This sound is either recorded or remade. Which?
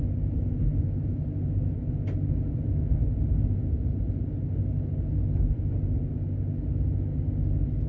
recorded